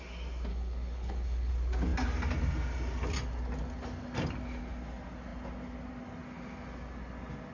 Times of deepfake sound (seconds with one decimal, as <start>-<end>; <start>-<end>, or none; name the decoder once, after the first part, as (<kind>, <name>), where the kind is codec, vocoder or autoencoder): 0.5-1.5 (codec, HILCodec)